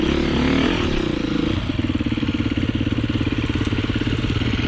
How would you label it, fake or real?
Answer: real